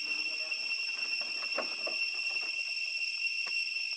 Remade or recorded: recorded